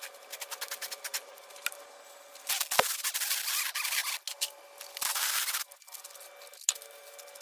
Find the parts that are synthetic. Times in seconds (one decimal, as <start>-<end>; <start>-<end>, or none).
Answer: 1.1-1.8